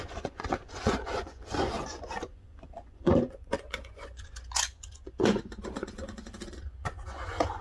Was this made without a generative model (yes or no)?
no